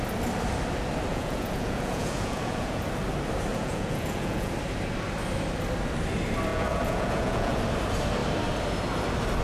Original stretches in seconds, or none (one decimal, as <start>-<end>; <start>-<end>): 0.0-1.1; 2.8-3.5; 4.5-6.5; 7.6-9.4